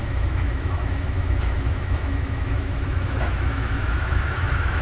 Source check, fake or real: fake